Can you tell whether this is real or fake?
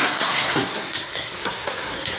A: fake